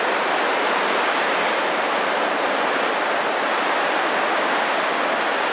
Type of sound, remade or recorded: recorded